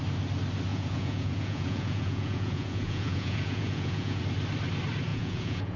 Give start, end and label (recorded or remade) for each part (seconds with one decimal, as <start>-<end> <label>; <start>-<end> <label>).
0.0-0.7 recorded; 0.7-4.2 remade; 4.2-5.1 recorded; 5.1-5.8 remade